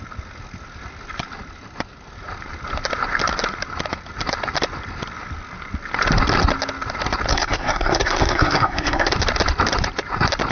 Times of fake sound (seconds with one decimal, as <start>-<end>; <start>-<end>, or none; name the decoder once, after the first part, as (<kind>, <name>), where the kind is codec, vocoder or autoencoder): 7.3-9.1 (codec, SNAC)